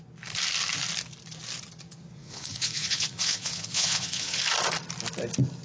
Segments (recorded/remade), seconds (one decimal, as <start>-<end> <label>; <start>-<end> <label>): 0.0-2.2 recorded; 2.2-4.4 remade; 4.4-5.6 recorded